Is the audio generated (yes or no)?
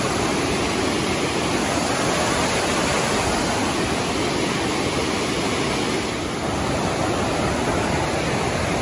no